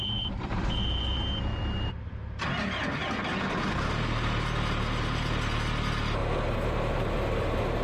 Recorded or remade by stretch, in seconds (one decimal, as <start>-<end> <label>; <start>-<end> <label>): 0.0-1.5 recorded; 1.5-2.1 remade; 2.1-6.2 recorded; 6.2-7.8 remade